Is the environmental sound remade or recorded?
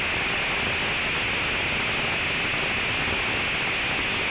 recorded